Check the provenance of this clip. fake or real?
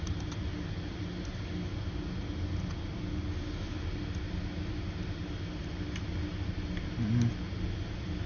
real